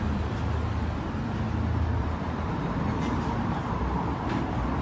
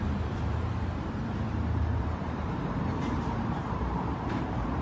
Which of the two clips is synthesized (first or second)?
second